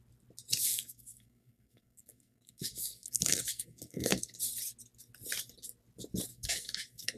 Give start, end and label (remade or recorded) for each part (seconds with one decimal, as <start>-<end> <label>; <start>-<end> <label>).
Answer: 0.0-0.7 recorded; 0.7-4.4 remade; 4.4-6.3 recorded; 6.3-7.2 remade